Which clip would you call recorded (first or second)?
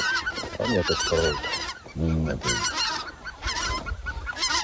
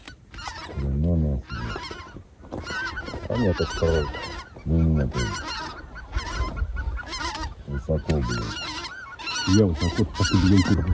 second